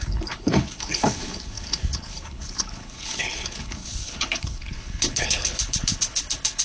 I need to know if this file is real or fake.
fake